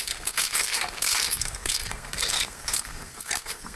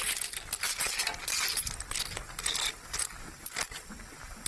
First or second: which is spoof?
first